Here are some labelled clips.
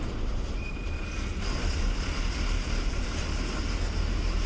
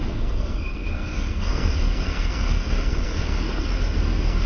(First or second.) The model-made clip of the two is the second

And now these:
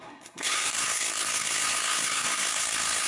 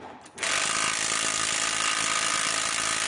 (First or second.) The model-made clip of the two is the first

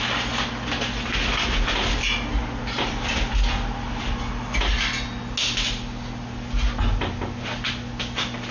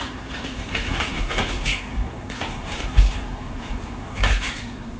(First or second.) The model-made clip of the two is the second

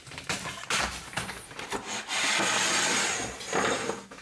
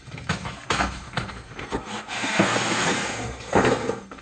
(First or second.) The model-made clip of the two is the second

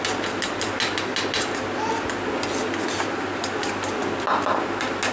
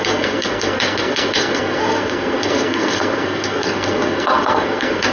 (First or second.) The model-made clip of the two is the second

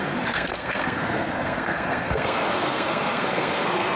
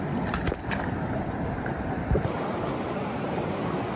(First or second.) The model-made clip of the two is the first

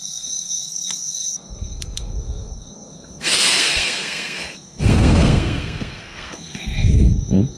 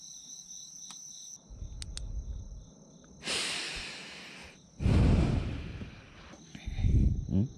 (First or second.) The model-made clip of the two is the first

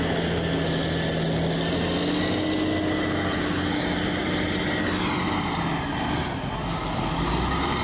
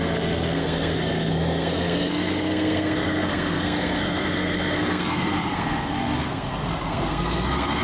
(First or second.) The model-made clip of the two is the second